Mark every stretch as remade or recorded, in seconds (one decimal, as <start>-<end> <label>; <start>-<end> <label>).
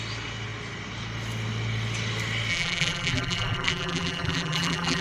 0.0-2.5 recorded; 2.5-5.0 remade